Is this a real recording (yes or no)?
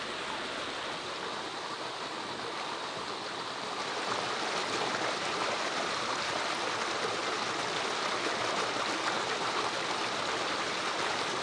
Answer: yes